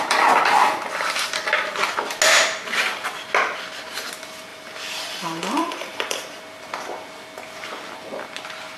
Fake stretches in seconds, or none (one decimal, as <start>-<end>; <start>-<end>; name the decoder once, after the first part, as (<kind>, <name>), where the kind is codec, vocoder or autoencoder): 4.5-6.4 (vocoder, BigVGAN v2)